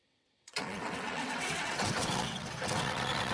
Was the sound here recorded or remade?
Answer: remade